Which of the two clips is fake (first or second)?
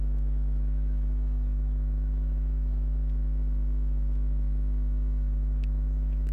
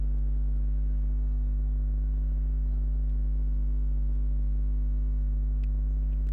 first